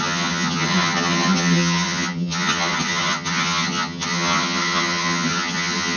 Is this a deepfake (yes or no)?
yes